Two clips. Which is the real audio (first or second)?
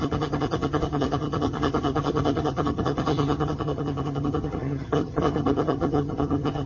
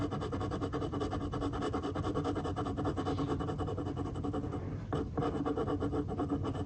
second